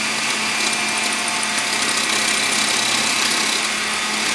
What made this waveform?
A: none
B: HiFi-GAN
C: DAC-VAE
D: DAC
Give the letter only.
A